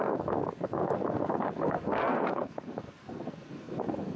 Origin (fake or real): fake